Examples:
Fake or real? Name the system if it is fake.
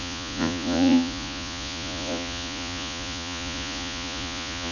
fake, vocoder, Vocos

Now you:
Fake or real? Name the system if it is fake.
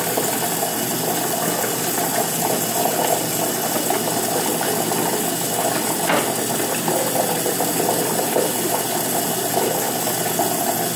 real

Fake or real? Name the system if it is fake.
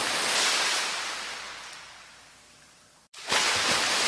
fake, vocoder, BigVGAN v2